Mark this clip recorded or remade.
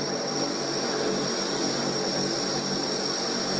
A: recorded